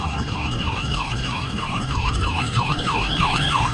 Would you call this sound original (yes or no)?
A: no